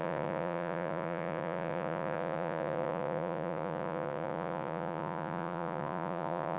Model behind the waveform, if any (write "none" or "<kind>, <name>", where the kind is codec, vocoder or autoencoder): vocoder, Vocos